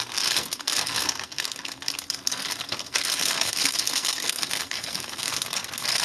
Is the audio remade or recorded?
remade